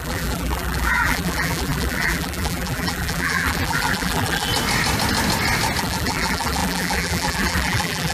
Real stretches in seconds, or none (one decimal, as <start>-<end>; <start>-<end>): 4.5-5.8